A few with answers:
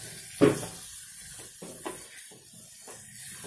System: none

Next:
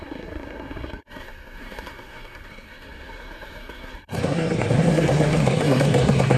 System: codec, SNAC